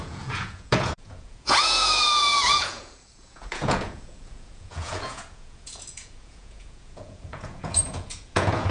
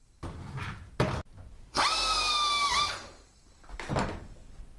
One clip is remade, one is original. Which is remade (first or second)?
first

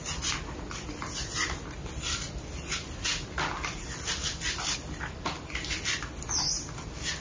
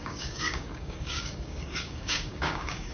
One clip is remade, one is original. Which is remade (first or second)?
second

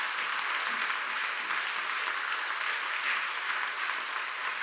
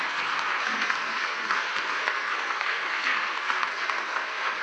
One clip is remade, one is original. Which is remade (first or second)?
second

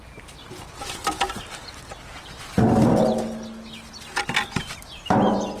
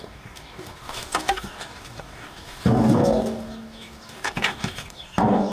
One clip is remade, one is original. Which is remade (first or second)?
second